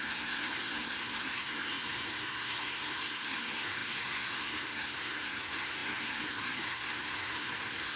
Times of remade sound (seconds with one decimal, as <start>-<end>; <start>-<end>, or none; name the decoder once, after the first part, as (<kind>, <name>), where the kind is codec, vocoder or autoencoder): 0.0-8.0 (codec, SNAC)